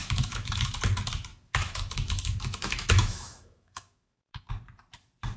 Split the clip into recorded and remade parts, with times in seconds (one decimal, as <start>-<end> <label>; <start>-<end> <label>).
0.0-0.7 remade; 0.7-1.3 recorded; 1.3-4.5 remade; 4.5-5.4 recorded